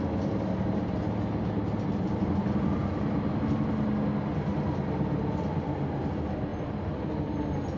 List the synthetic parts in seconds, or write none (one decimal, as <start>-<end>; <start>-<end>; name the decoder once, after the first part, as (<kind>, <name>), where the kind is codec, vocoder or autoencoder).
none